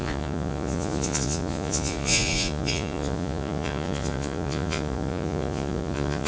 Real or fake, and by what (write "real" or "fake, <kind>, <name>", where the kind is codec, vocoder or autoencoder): fake, vocoder, Vocos